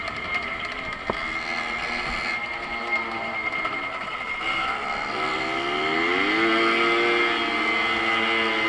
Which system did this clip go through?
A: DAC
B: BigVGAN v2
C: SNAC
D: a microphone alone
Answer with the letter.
D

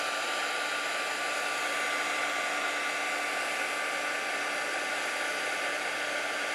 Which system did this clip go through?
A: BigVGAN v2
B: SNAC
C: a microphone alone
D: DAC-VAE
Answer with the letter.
C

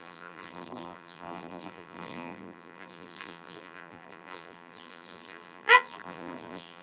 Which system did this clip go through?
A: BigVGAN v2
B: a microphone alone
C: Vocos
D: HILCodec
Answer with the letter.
A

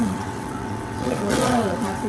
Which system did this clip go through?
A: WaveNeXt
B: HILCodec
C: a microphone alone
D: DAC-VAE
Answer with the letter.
A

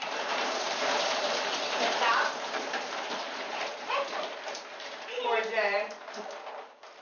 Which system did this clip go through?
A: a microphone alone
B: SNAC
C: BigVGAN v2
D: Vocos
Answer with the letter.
C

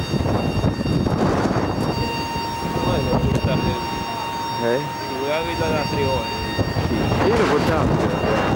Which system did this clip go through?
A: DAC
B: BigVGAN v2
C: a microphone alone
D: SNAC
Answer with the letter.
C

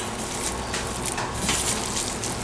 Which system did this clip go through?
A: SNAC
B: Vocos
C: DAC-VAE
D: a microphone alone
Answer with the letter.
D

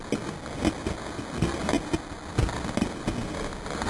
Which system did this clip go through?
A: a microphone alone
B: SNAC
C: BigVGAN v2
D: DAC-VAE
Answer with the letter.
A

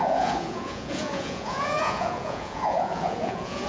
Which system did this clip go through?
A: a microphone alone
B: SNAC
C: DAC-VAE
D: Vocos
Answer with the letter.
D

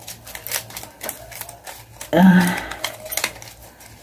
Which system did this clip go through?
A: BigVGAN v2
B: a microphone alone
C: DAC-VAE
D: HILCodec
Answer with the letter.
B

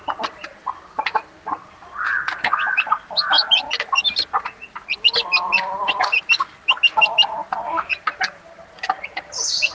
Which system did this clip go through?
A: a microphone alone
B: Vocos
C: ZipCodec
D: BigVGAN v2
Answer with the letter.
A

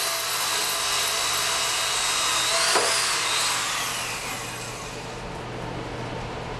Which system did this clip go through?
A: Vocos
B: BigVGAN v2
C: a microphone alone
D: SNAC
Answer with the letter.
C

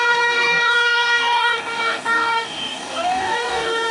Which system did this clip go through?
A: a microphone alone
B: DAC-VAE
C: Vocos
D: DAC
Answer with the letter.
D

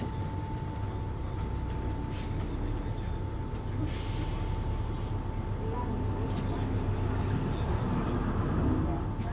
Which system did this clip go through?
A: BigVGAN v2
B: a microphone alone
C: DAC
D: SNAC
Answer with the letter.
B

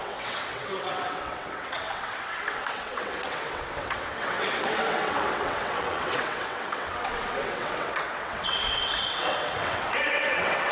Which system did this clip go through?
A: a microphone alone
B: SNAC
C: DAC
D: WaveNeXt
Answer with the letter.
D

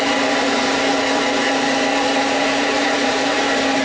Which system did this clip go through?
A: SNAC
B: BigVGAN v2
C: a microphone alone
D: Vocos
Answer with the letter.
B